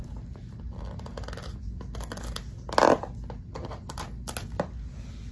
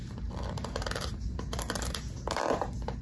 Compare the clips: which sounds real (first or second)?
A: first